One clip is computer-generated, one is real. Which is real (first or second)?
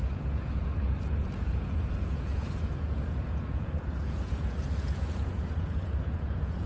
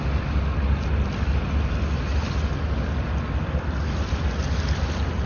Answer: second